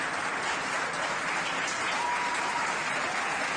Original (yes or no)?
yes